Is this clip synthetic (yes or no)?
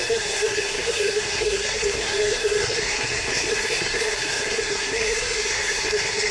yes